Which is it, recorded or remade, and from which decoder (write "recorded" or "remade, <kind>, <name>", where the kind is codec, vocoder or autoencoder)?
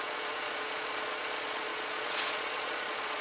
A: remade, vocoder, Vocos